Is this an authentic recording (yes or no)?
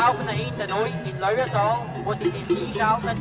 yes